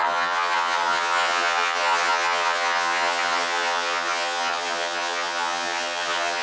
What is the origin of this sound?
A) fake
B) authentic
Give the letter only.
A